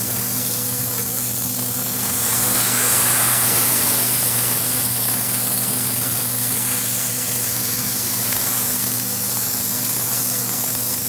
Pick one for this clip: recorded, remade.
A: remade